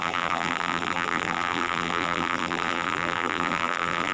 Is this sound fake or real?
fake